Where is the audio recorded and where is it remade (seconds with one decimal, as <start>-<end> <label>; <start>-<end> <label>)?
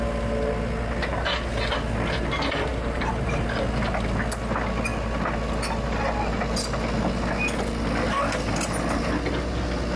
0.0-2.7 recorded; 2.7-3.6 remade; 3.6-10.0 recorded